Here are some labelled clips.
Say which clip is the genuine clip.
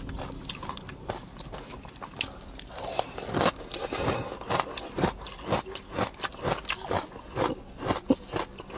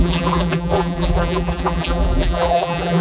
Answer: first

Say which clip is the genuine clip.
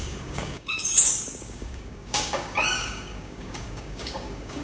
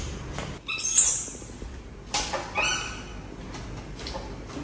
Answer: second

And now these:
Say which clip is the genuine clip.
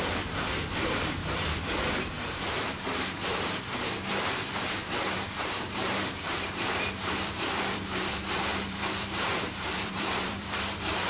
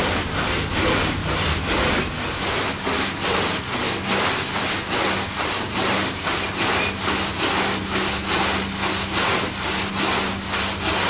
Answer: second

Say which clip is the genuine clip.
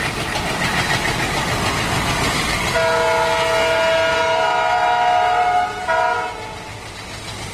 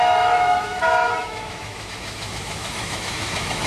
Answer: first